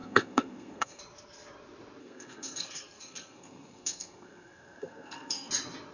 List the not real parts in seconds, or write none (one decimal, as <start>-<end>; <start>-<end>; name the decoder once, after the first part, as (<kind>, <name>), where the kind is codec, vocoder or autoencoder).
0.0-1.0 (codec, SNAC); 2.0-5.5